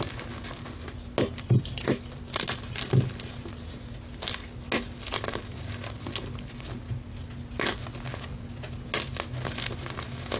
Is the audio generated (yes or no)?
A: no